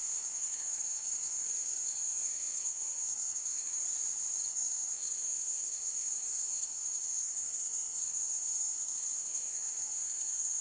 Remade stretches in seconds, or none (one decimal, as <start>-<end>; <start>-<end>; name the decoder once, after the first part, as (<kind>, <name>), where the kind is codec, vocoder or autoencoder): 0.0-3.8 (codec, SNAC); 4.5-10.6